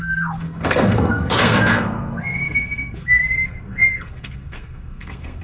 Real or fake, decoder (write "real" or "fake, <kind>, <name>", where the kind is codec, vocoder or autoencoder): fake, codec, SNAC